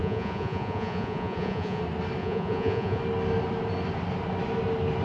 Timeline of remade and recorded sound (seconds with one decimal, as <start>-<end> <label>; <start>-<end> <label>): 0.0-1.8 remade; 1.8-2.2 recorded; 2.2-3.0 remade; 3.0-5.0 recorded